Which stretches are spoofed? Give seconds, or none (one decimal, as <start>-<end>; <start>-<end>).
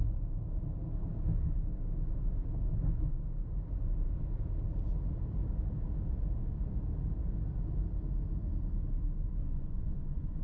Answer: 9.4-10.4